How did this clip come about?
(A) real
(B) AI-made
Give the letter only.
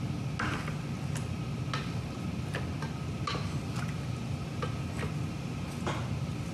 A